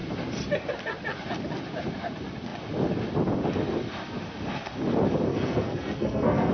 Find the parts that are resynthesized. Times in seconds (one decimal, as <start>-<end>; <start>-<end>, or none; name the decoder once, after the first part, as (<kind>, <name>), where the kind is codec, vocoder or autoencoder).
5.3-6.5 (codec, SNAC)